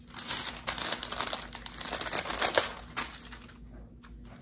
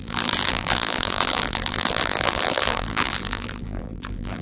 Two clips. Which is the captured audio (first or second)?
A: first